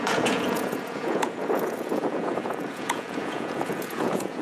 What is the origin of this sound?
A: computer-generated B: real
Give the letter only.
A